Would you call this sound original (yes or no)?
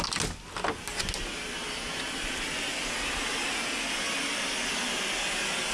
yes